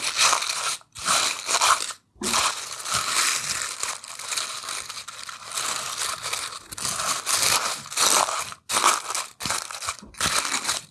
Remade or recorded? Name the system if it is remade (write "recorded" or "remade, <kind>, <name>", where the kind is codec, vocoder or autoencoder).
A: recorded